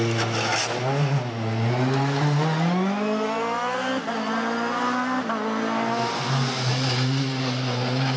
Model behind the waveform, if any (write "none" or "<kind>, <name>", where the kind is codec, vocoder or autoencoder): none